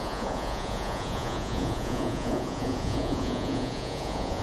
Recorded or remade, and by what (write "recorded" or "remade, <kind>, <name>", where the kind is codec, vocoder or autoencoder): remade, vocoder, Vocos